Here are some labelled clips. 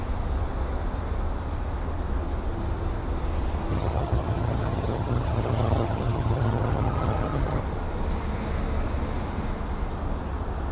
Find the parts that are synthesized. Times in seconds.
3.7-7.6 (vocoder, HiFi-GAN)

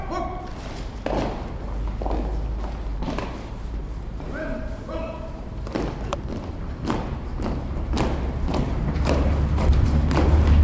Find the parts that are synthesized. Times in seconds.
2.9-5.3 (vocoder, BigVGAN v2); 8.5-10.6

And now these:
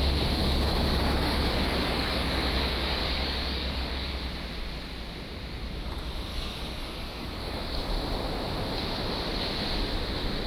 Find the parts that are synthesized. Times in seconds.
0.4-4.2 (codec, DAC); 6.3-7.9